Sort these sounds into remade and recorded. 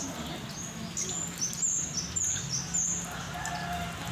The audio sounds recorded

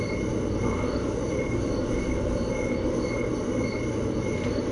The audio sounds remade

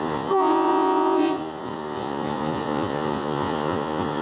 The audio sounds remade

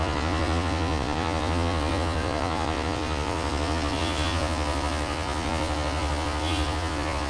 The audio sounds remade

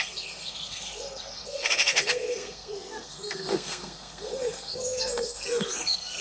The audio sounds remade